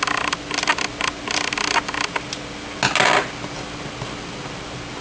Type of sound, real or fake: real